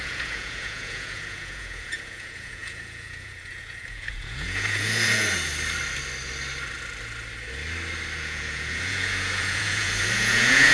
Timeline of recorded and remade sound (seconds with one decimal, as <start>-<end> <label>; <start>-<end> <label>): 0.0-5.5 remade; 5.5-8.2 recorded; 8.2-10.7 remade